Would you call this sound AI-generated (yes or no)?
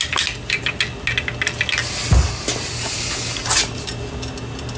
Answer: no